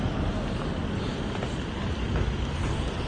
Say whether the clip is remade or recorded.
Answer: recorded